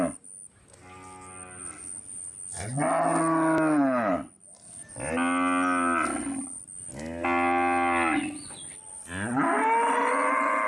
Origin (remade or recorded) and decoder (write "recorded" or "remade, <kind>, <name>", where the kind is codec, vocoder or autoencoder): recorded